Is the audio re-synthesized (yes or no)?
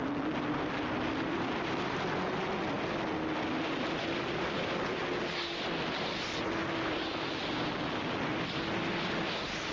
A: no